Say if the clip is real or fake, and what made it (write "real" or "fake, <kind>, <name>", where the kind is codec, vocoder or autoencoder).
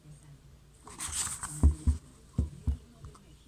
real